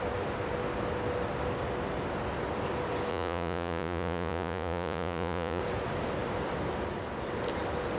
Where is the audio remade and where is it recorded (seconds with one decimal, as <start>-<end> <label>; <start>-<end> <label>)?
0.0-3.1 recorded; 3.1-5.6 remade; 5.6-8.0 recorded